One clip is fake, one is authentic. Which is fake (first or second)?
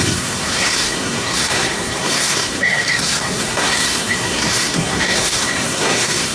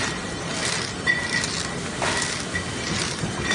first